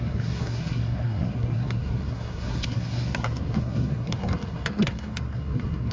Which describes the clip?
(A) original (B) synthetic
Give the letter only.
B